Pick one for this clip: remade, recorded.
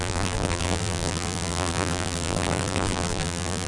remade